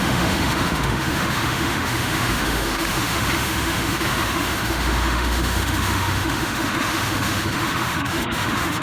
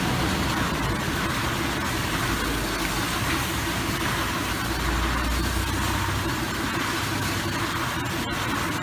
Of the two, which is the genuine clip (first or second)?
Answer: second